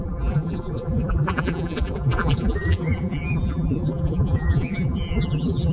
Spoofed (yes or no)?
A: yes